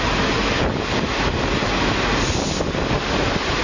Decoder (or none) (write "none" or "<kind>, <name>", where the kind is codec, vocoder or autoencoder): none